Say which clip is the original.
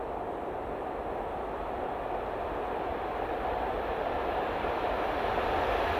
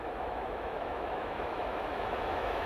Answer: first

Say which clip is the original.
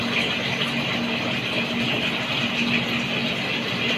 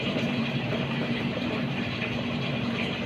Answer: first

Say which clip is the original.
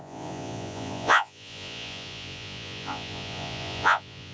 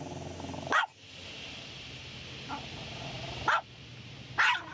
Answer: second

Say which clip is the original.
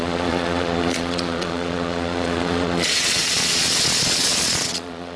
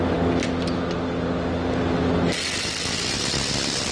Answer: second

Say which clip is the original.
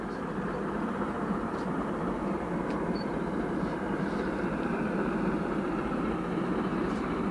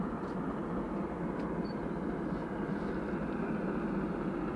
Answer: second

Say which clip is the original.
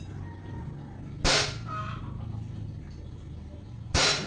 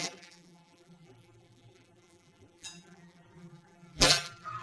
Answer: first